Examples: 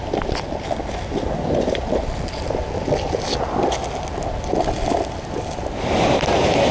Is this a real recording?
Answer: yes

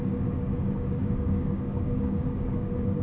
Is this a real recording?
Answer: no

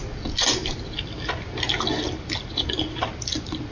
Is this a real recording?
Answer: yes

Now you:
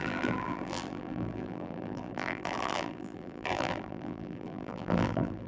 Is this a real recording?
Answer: no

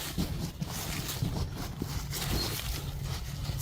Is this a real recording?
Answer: yes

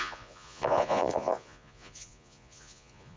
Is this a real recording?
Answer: no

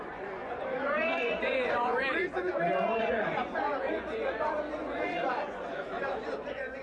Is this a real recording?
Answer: no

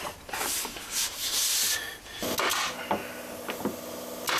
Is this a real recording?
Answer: yes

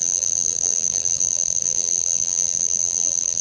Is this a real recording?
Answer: no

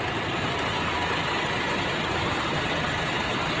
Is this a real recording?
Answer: yes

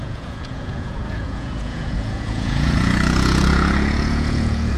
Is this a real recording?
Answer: no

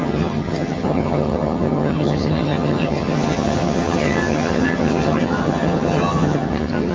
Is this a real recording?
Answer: no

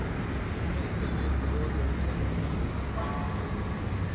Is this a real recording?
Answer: yes